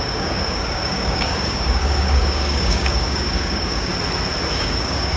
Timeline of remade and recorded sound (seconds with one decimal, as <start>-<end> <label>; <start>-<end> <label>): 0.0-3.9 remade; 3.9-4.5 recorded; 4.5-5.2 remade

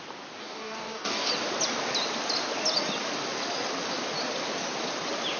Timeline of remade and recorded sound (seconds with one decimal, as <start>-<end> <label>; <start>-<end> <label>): 0.0-0.4 recorded; 0.4-1.3 remade; 1.3-5.4 recorded

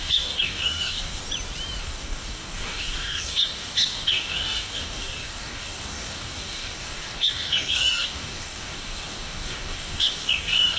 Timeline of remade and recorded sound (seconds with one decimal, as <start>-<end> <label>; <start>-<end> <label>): 0.0-1.2 remade; 1.2-1.8 recorded; 1.8-10.8 remade